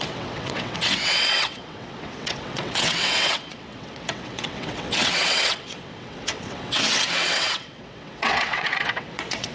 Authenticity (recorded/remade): remade